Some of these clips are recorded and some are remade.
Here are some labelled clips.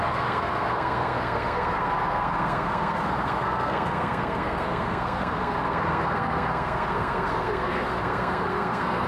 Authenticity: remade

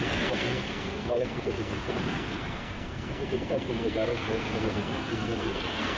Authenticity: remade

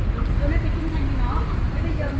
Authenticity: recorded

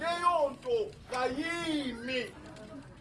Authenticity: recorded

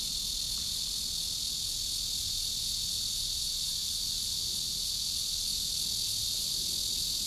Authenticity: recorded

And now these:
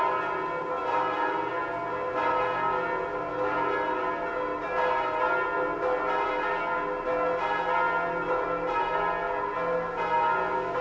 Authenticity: recorded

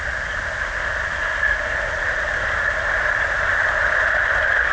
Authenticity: recorded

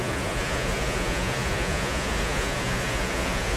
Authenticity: remade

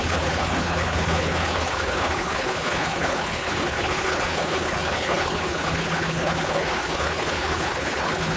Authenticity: remade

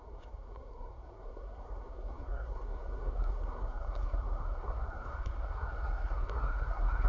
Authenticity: remade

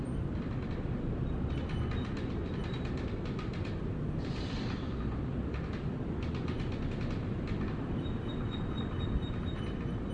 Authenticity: recorded